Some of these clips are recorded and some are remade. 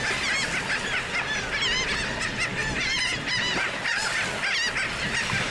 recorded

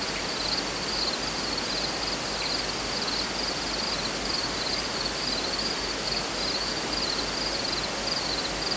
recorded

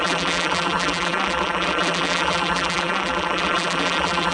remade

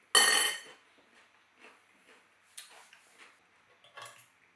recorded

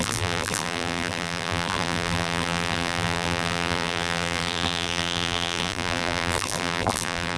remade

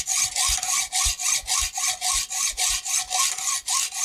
recorded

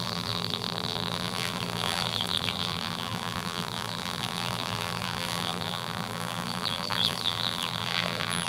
remade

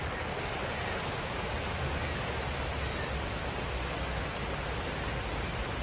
recorded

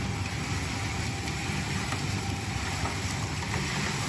remade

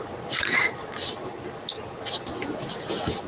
recorded